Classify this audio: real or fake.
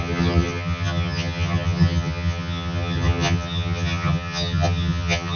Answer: fake